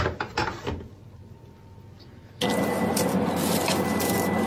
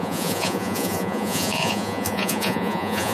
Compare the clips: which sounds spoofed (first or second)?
second